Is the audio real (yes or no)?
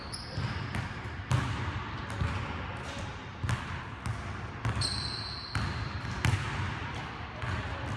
yes